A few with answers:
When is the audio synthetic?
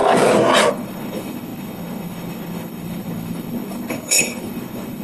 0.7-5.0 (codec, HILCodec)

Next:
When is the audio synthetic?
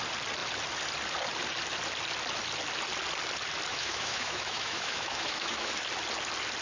3.7-5.8 (autoencoder, DAC-VAE)